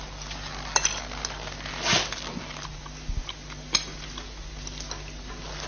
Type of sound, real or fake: real